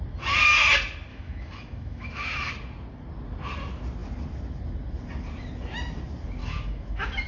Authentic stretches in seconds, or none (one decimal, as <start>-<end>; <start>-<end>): 0.0-1.1; 2.5-6.4